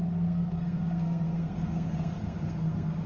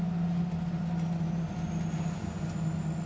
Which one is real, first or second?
second